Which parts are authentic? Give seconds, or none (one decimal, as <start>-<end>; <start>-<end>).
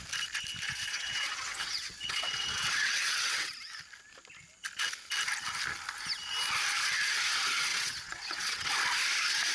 0.0-0.7; 3.5-7.7; 8.7-9.5